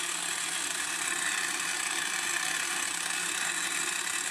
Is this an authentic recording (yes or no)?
no